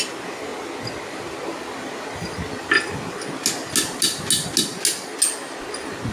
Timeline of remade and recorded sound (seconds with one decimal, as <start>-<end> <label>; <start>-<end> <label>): 0.0-6.1 recorded

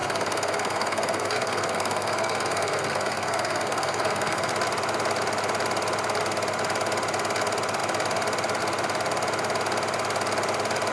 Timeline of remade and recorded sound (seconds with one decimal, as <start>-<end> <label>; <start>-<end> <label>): 0.0-4.5 remade; 4.5-10.9 recorded